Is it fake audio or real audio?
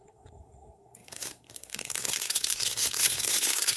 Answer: fake